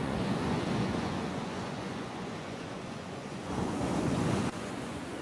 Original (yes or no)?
no